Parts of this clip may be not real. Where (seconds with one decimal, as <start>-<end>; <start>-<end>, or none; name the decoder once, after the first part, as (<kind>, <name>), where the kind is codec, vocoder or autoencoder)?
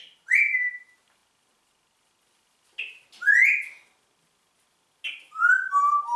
none